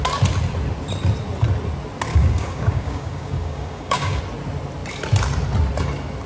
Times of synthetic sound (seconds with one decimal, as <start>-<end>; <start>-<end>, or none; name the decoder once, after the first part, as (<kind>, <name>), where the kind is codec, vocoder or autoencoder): 2.1-4.2 (codec, DAC)